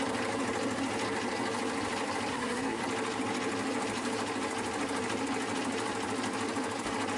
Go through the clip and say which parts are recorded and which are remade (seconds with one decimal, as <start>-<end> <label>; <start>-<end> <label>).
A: 0.0-2.3 recorded; 2.3-2.8 remade; 2.8-7.2 recorded